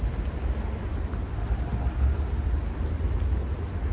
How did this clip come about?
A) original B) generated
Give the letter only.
A